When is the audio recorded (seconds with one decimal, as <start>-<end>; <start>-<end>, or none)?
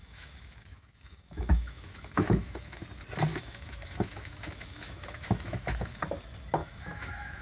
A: 2.8-3.3; 6.0-6.6